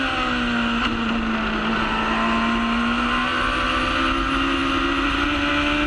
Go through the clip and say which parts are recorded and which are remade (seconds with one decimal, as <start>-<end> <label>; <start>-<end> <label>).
0.0-5.9 recorded